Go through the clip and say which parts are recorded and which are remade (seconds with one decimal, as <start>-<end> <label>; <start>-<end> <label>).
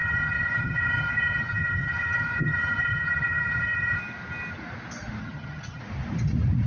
0.0-4.0 remade; 4.0-5.2 recorded; 5.2-5.8 remade; 5.8-6.7 recorded